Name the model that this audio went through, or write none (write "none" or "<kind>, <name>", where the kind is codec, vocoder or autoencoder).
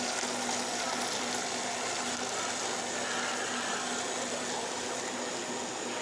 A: none